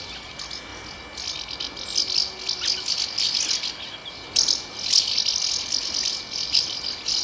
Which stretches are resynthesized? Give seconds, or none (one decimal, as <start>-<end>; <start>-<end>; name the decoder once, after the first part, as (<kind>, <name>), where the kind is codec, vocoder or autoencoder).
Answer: none